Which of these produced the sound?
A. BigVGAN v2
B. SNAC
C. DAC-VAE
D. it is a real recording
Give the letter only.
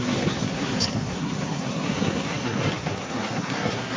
B